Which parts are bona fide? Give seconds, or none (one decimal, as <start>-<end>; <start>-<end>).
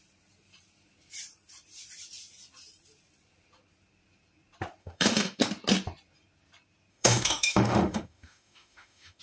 0.0-4.8; 5.4-6.9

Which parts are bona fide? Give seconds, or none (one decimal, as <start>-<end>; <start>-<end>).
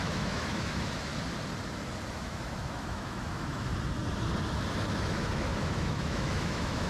1.1-2.1; 3.7-4.7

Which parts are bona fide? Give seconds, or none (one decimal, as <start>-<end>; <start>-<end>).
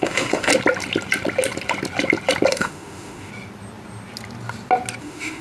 0.5-2.5; 3.3-5.0